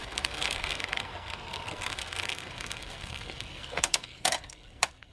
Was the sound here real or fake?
fake